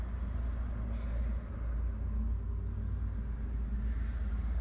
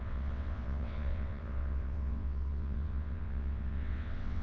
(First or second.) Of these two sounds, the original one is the first